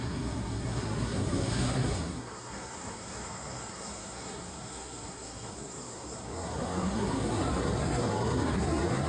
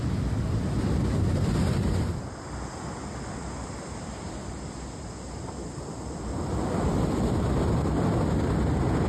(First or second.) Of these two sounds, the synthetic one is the first